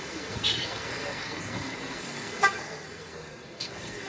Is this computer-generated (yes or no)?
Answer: yes